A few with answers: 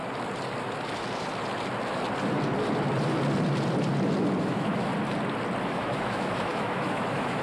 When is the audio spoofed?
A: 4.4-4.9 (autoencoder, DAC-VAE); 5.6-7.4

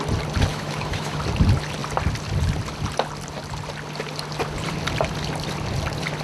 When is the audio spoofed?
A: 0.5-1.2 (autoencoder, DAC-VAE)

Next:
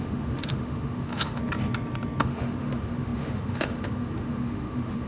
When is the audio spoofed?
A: 0.0-1.4 (autoencoder, DAC-VAE); 2.2-5.1

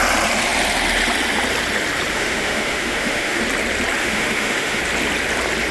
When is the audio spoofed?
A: 2.1-3.4 (autoencoder, DAC-VAE); 4.0-4.8

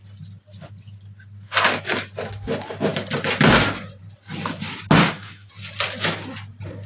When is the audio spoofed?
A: 5.0-5.5 (autoencoder, DAC-VAE)